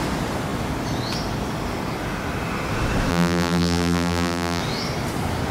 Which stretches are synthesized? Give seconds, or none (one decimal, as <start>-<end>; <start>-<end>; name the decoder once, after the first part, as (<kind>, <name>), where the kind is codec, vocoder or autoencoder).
3.1-4.6 (vocoder, BigVGAN v2)